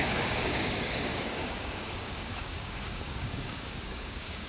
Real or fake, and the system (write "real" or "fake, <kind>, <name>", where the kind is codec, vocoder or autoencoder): fake, codec, DAC